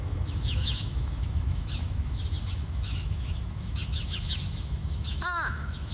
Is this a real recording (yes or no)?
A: no